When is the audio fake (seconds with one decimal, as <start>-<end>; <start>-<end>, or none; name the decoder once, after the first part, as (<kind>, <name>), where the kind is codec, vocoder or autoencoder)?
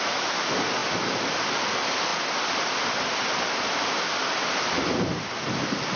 none